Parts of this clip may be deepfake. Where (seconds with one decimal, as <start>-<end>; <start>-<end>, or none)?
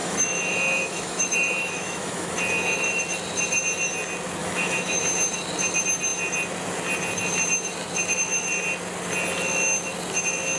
0.0-3.0; 4.4-5.0